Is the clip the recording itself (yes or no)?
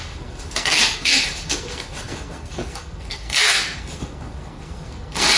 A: no